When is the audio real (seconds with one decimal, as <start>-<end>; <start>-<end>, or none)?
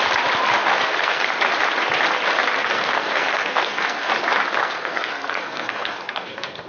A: 0.0-0.7; 1.3-2.6; 4.1-4.6